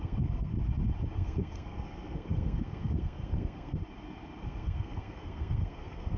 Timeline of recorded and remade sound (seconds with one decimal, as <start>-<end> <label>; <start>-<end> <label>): 0.0-0.5 remade; 0.5-1.1 recorded; 1.1-3.8 remade; 3.8-4.4 recorded; 4.4-6.2 remade